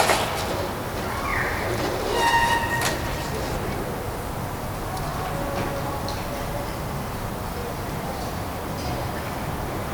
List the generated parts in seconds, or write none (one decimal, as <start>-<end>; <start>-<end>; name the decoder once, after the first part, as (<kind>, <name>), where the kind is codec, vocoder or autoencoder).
1.3-2.3 (vocoder, BigVGAN v2)